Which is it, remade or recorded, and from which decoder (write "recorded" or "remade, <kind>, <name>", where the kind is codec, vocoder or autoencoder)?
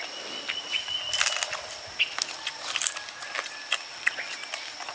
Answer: recorded